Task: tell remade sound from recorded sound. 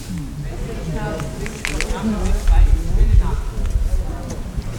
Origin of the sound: recorded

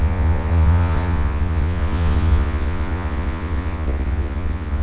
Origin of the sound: remade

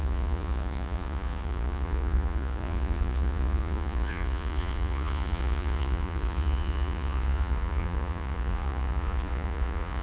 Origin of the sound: remade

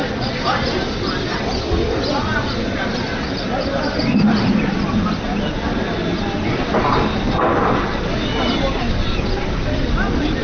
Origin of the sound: recorded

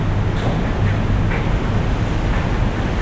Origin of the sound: recorded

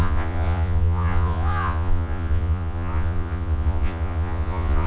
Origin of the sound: remade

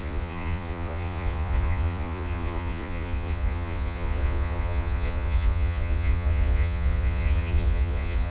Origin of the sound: remade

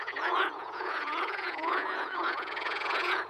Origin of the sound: remade